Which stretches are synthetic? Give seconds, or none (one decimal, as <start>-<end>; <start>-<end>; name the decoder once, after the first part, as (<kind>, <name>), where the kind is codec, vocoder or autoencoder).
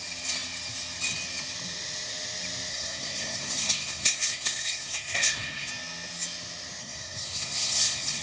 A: 2.7-5.7 (codec, SNAC); 6.8-8.2